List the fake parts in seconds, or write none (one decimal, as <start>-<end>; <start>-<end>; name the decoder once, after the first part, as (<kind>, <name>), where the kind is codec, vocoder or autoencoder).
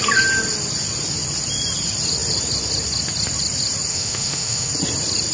3.9-4.7 (autoencoder, DAC-VAE)